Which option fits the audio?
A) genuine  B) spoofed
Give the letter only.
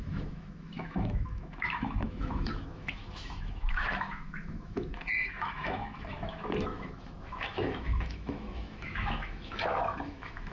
B